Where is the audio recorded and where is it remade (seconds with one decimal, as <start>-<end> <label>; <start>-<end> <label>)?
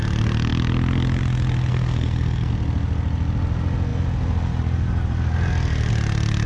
0.0-1.7 recorded; 1.7-2.5 remade; 2.5-6.5 recorded